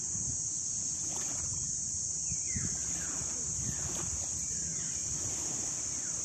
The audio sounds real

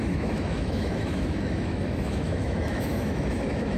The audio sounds fake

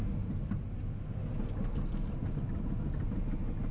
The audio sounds real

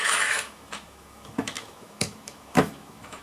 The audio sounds fake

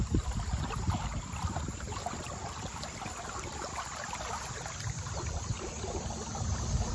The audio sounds real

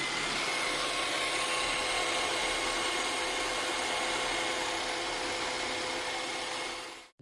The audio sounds real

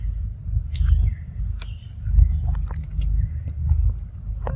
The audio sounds real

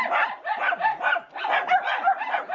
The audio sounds real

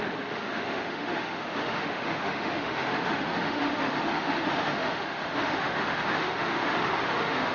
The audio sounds fake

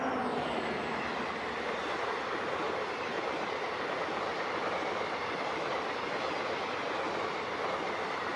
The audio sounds real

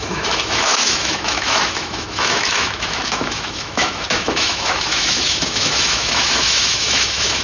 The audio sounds fake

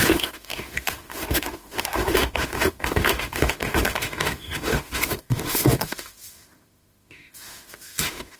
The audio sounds fake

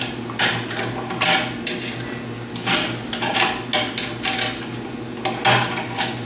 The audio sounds real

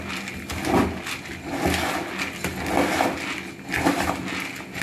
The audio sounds real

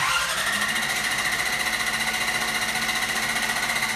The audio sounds real